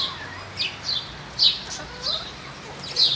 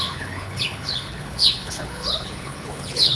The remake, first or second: second